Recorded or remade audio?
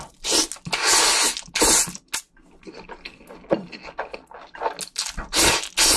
recorded